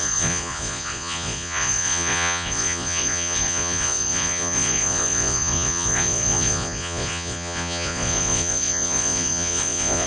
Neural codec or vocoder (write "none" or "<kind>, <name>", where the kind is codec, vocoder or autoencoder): vocoder, Vocos